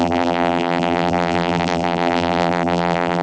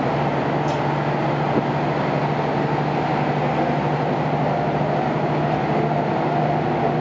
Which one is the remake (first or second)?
first